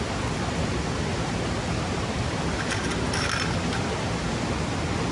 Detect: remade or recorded recorded